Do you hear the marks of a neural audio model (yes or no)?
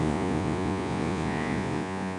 yes